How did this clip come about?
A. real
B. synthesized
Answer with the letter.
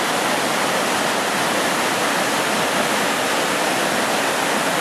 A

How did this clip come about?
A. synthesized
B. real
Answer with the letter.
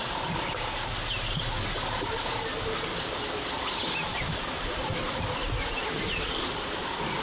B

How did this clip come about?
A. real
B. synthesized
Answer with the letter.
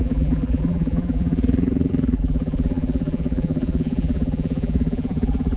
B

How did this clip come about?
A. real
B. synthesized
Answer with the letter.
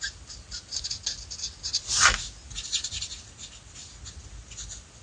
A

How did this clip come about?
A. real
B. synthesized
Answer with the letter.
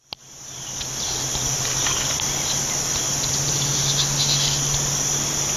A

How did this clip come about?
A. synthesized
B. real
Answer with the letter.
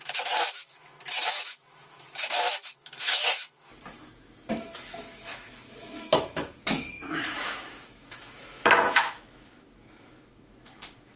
A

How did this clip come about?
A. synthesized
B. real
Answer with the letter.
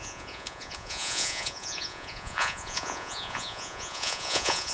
A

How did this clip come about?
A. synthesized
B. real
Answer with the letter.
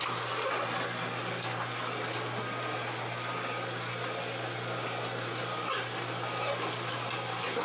B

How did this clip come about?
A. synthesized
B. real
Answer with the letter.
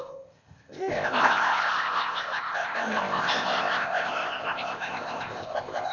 A